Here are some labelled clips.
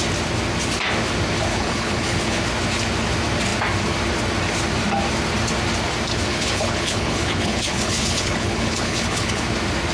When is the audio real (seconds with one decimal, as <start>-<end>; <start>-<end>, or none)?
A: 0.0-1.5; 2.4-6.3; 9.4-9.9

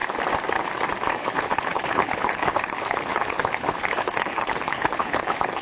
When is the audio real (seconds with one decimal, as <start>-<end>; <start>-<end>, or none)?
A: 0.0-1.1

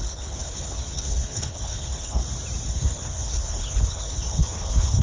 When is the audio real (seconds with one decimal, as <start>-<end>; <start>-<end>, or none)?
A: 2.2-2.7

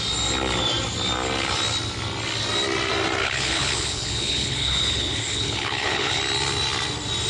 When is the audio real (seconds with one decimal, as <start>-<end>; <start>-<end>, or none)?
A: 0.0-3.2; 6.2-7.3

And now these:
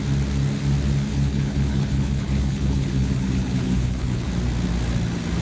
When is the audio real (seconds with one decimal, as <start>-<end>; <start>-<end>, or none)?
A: 0.0-1.1; 4.3-5.4